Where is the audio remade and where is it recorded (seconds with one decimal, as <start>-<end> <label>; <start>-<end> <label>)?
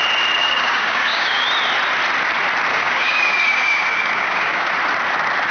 0.0-0.4 recorded; 0.4-1.4 remade; 1.4-2.7 recorded; 2.7-4.7 remade; 4.7-5.5 recorded